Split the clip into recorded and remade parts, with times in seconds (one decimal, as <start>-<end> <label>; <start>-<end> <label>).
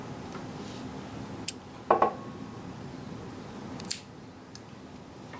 0.0-5.4 recorded